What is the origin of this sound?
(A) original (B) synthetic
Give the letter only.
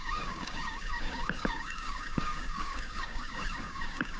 B